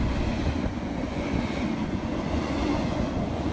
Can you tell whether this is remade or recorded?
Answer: remade